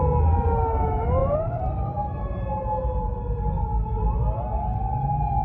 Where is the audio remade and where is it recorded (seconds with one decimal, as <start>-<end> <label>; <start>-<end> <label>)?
0.0-1.2 recorded; 1.2-4.4 remade; 4.4-5.4 recorded

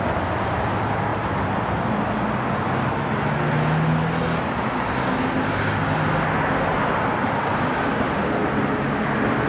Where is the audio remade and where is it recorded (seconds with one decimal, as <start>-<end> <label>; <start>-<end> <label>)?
0.0-9.5 recorded

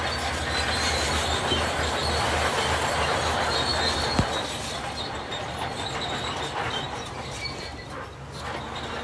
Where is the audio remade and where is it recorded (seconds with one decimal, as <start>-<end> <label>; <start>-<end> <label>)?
0.0-3.7 recorded; 3.7-7.8 remade; 7.8-9.0 recorded